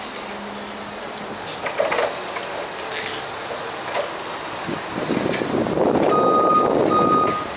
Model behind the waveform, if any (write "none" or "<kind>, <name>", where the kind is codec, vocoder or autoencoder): none